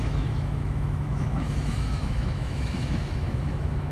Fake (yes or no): yes